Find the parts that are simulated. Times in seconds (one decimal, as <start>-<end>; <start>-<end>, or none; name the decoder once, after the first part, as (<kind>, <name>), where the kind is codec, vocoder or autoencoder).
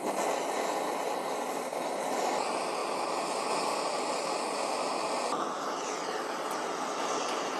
none